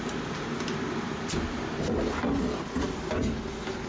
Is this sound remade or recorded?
recorded